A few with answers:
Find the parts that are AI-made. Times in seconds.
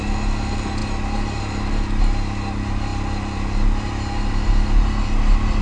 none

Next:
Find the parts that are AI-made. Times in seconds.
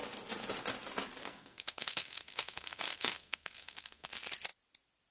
1.2-4.1 (codec, SNAC)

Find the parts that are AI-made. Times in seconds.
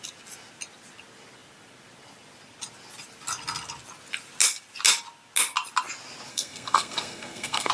6.3-7.7 (codec, SNAC)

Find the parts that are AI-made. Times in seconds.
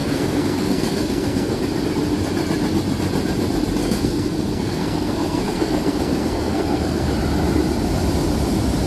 0.0-1.6 (codec, SNAC); 3.8-7.1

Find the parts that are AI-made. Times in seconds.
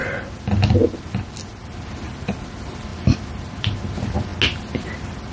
none